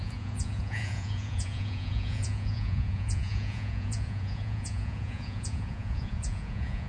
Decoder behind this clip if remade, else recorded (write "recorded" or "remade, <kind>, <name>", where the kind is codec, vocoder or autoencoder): remade, vocoder, Vocos